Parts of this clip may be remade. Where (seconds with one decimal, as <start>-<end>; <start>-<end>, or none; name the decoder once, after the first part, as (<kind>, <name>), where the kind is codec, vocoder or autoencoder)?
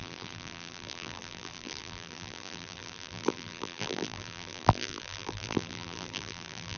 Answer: 0.0-6.8 (vocoder, BigVGAN v2)